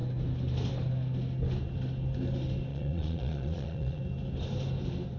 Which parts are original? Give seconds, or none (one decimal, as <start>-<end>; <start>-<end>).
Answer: 0.0-2.7; 4.0-5.2